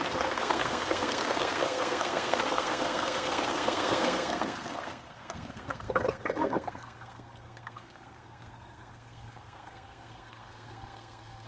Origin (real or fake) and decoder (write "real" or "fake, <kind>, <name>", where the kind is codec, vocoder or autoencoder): fake, codec, SNAC